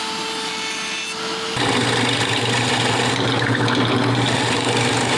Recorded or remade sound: recorded